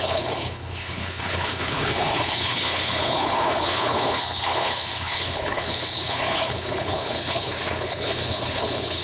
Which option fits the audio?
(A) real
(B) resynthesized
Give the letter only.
B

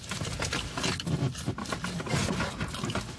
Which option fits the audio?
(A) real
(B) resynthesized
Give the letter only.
A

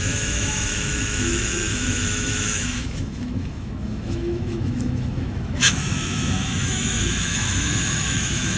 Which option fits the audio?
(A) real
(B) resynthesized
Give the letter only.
B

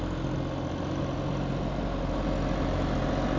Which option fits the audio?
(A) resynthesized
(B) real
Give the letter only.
B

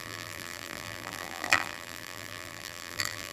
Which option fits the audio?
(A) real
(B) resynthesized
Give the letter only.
B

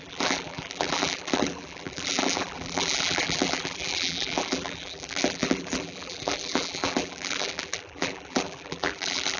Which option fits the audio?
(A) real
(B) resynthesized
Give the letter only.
B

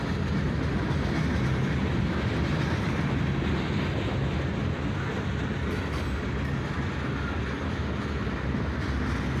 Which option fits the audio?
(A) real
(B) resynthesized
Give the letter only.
A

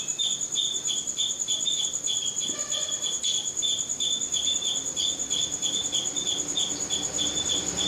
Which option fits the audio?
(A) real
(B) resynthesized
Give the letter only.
B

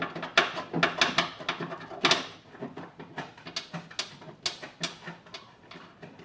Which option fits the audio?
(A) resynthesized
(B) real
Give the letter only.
B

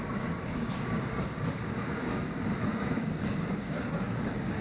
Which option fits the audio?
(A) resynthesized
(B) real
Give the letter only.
A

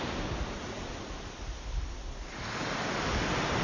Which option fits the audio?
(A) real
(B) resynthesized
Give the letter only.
A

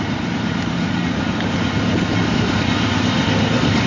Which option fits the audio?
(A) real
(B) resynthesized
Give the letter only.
B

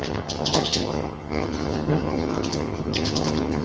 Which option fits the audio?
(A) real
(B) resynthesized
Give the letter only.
B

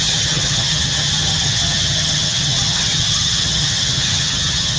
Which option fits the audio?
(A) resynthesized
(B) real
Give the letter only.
A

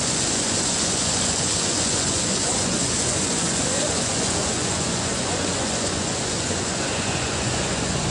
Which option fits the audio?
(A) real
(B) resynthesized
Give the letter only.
B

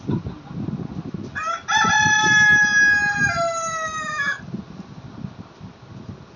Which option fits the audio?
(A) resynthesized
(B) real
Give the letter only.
B